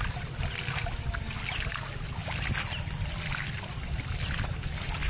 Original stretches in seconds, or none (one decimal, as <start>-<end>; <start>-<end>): 0.0-5.1